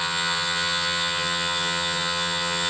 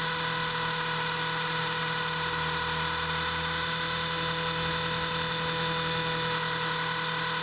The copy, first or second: first